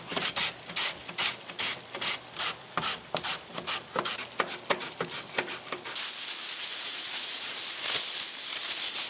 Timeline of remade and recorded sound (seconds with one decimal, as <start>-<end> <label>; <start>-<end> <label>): 0.0-6.7 recorded; 6.7-7.6 remade; 7.6-9.1 recorded